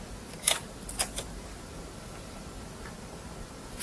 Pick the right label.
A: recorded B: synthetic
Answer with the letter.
A